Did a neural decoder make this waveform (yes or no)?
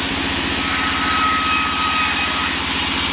no